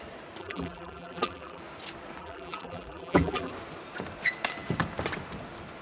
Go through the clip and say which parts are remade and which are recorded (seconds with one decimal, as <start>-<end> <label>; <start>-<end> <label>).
0.0-0.4 recorded; 0.4-1.6 remade; 1.6-2.2 recorded; 2.2-3.5 remade; 3.5-5.8 recorded